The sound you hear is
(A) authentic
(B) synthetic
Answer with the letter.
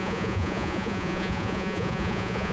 B